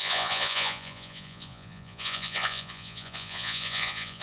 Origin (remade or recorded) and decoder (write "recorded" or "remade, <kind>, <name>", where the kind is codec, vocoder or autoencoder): remade, vocoder, Vocos